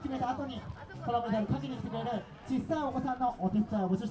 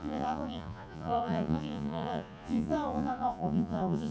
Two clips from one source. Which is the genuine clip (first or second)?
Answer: first